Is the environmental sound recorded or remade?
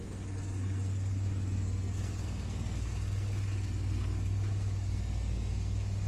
remade